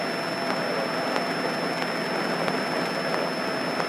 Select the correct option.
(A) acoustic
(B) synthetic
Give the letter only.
A